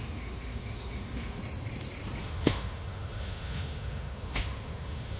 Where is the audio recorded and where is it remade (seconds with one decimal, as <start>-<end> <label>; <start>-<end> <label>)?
0.0-1.4 remade; 1.4-2.2 recorded; 2.2-5.2 remade